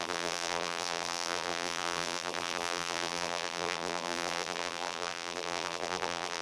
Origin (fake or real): fake